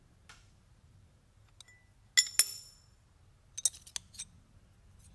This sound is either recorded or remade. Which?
recorded